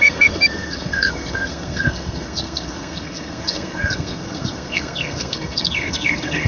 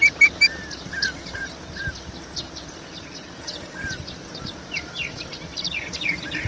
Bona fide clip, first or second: second